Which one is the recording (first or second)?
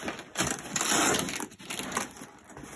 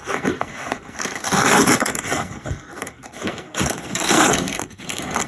first